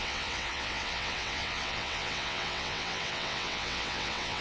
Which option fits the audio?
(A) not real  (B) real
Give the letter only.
A